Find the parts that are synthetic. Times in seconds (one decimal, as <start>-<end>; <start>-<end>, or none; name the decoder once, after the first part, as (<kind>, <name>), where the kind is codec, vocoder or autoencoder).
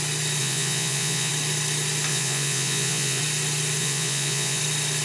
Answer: 0.4-1.3 (vocoder, Vocos); 2.1-3.2; 3.8-4.6